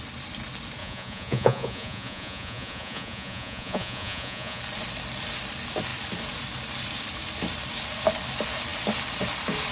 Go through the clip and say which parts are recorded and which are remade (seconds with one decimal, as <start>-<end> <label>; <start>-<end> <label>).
0.0-0.8 recorded; 0.8-4.6 remade; 4.6-9.7 recorded